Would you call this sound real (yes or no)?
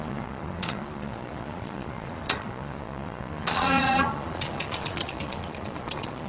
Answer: no